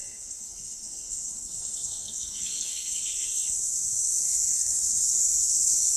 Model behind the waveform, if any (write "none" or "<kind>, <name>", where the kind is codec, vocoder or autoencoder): codec, SNAC